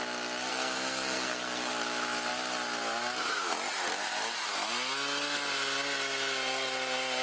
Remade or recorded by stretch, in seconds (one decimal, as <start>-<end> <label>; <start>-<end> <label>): 0.0-0.5 recorded; 0.5-1.7 remade; 1.7-7.2 recorded